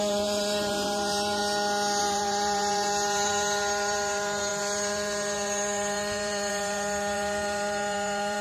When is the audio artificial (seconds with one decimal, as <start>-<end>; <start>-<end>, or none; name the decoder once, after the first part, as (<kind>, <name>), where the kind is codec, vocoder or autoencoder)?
0.0-1.4 (vocoder, BigVGAN v2); 2.0-8.4